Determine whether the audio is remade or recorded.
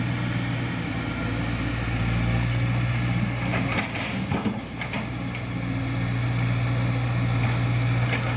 recorded